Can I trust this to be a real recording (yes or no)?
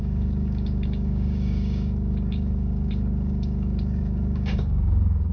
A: no